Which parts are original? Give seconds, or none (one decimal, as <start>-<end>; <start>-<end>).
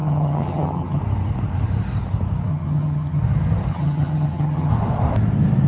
1.0-2.5; 3.2-3.7; 4.7-5.7